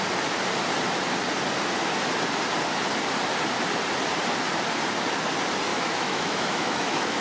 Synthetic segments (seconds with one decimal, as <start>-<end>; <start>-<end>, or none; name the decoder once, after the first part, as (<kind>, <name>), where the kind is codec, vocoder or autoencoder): 5.7-7.2 (autoencoder, DAC-VAE)